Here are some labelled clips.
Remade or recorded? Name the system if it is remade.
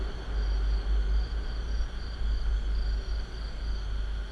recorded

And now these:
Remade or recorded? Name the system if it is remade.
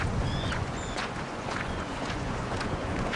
remade, vocoder, Vocos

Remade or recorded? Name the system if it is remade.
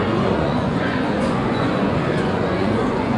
remade, vocoder, Vocos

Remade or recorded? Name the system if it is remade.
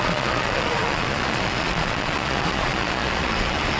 remade, vocoder, Vocos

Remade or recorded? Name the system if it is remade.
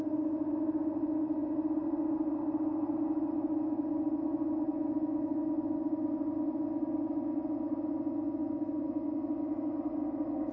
recorded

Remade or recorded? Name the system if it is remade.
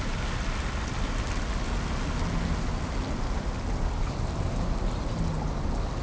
recorded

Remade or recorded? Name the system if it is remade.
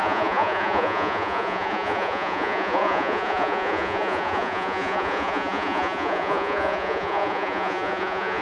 remade, vocoder, Vocos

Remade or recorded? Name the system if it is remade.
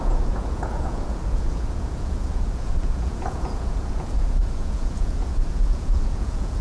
remade, vocoder, Vocos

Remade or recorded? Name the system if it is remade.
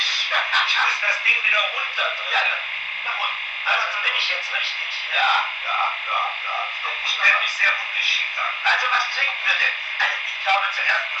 remade, vocoder, Vocos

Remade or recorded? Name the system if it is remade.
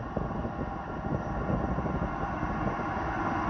recorded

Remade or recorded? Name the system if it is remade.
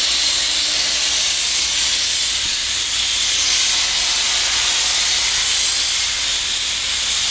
recorded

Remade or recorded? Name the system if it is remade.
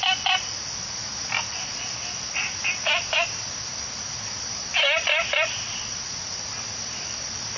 recorded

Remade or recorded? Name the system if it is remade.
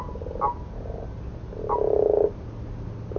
recorded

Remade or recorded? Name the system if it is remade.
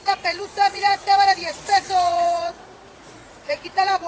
remade, vocoder, Vocos